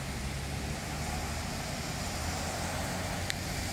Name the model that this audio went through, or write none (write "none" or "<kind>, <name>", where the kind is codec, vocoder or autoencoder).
none